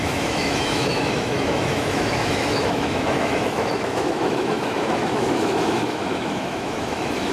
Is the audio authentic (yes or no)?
no